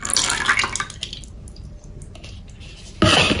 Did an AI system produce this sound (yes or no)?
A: no